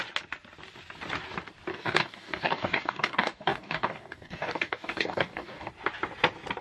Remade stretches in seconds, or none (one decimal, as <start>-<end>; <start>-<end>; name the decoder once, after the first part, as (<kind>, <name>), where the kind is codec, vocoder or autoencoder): 1.7-5.7 (codec, DAC)